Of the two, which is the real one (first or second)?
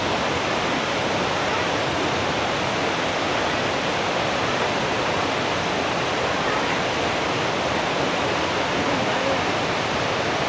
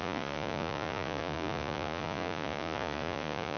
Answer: first